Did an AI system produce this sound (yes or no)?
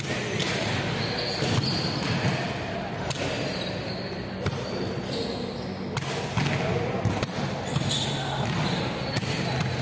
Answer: no